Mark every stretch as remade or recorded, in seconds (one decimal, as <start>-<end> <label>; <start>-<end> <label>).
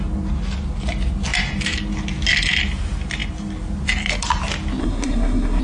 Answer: 0.0-4.8 recorded; 4.8-5.6 remade